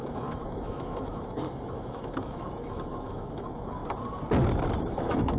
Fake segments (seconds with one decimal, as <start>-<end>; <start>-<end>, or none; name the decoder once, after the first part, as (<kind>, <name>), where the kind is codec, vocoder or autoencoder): 0.0-3.8 (autoencoder, DAC-VAE); 4.8-5.4